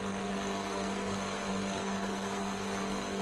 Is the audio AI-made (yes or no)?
yes